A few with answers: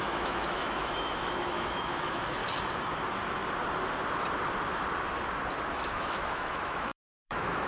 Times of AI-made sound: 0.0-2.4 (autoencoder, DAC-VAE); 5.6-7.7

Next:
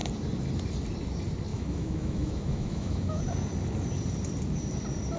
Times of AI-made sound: 1.5-3.2 (autoencoder, DAC-VAE)

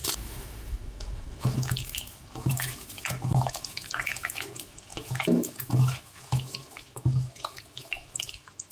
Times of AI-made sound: 0.0-8.7 (autoencoder, DAC-VAE)

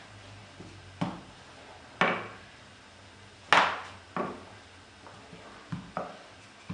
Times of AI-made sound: none

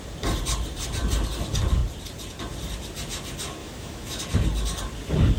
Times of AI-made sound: 3.6-4.2 (autoencoder, DAC-VAE)

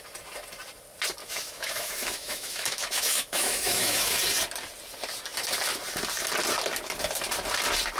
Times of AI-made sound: 1.2-4.2 (autoencoder, DAC-VAE)

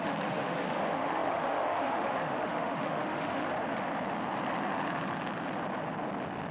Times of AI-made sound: 0.0-3.4 (autoencoder, DAC-VAE)